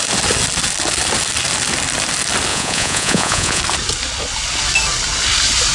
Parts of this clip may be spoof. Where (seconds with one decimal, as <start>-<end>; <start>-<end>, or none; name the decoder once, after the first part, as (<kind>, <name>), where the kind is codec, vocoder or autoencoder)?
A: 2.5-3.6 (vocoder, Vocos)